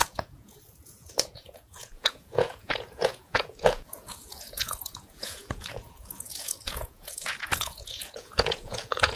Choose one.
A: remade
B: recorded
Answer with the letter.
A